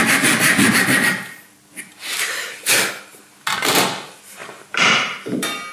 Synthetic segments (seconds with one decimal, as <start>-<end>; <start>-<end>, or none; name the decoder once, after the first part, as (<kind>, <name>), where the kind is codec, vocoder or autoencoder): 4.4-5.2 (vocoder, BigVGAN v2)